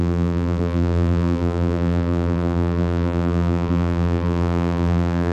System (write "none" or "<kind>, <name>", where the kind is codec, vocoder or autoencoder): vocoder, BigVGAN v2